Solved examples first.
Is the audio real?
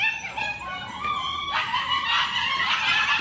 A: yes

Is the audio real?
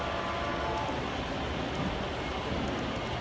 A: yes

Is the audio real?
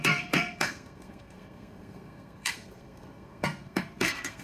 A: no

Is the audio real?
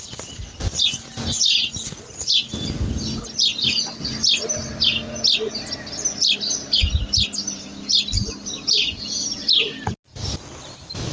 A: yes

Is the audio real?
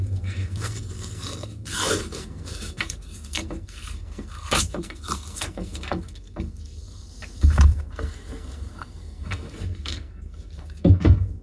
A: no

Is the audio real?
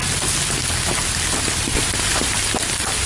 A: yes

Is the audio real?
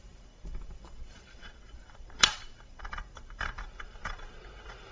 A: no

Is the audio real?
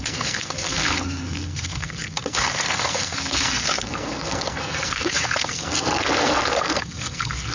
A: no